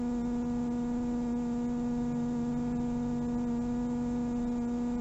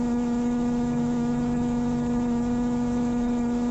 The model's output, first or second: second